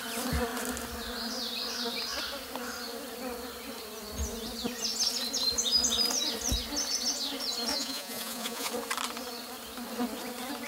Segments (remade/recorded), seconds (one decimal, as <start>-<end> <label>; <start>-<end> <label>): 0.0-7.7 recorded; 7.7-8.7 remade; 8.7-10.7 recorded